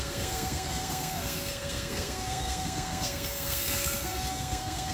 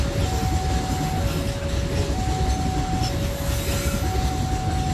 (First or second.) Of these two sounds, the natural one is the second